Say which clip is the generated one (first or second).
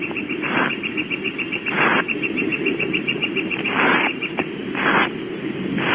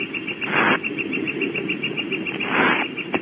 first